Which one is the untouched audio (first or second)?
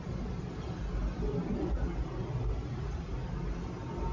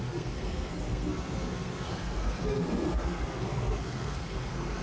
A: first